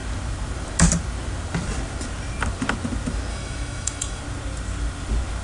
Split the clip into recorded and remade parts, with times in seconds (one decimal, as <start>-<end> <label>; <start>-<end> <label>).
0.0-3.3 recorded; 3.3-4.2 remade; 4.2-5.4 recorded

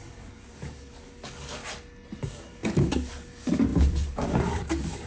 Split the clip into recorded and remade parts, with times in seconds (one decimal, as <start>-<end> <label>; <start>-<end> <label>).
0.0-1.6 remade; 1.6-2.2 recorded; 2.2-5.1 remade

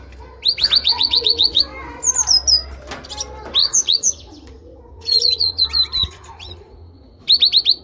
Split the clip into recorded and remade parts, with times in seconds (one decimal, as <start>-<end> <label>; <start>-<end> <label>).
0.0-0.8 recorded; 0.8-1.6 remade; 1.6-3.6 recorded; 3.6-5.6 remade; 5.6-6.0 recorded; 6.0-7.2 remade; 7.2-7.8 recorded

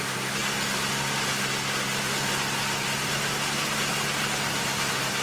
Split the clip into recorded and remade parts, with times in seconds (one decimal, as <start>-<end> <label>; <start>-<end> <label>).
0.0-5.2 recorded